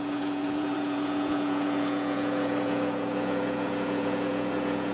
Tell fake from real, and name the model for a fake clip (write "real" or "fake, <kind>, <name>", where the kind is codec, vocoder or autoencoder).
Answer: fake, vocoder, Vocos